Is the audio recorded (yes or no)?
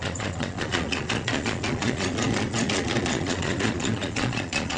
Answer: no